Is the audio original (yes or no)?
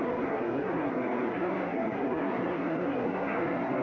no